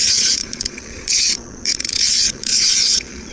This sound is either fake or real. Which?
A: fake